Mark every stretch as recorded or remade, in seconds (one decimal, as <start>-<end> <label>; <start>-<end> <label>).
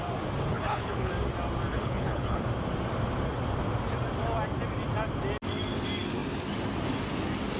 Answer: 0.0-0.5 recorded; 0.5-1.1 remade; 1.1-1.7 recorded; 1.7-2.4 remade; 2.4-7.6 recorded